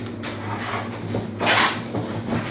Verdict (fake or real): real